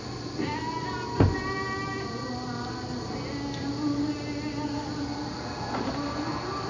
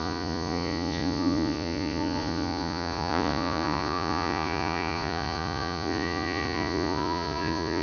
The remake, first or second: second